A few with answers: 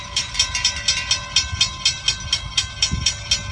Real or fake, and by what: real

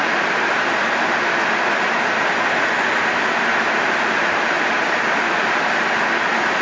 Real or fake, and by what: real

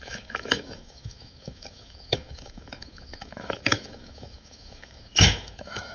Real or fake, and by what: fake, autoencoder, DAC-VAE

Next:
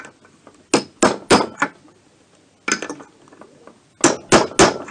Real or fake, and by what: real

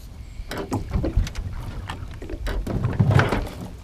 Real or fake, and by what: real